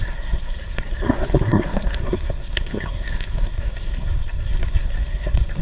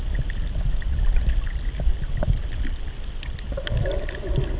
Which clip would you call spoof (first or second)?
first